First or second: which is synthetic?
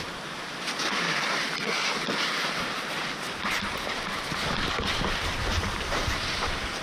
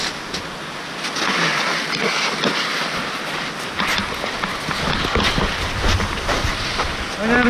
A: first